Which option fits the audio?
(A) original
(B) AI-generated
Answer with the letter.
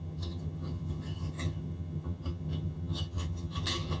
B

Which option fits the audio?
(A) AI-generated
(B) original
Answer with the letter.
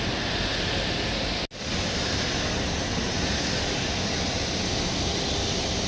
B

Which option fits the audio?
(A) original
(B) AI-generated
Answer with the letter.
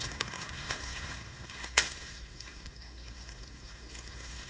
B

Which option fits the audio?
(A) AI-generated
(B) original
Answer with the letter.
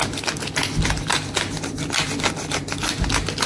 B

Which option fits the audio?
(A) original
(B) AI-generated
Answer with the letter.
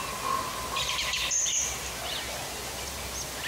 A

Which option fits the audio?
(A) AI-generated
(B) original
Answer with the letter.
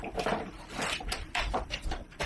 A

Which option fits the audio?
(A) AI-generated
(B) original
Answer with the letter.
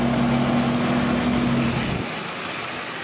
B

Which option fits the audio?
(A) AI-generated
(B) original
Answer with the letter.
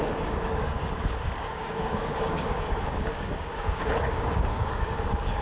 A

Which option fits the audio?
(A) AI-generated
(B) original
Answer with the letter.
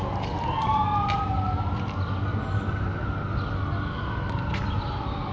B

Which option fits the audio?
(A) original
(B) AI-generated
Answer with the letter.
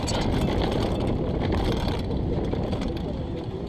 A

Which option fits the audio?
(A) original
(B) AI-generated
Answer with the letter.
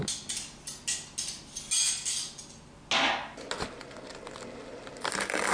A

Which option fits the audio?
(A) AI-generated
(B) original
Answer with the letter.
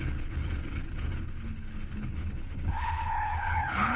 A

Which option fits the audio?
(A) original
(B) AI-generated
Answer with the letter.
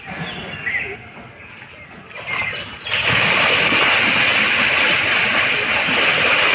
A